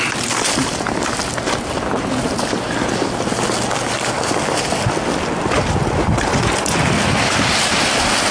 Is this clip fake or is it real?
real